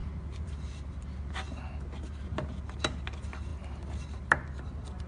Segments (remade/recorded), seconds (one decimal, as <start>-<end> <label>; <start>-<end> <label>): 0.0-5.1 recorded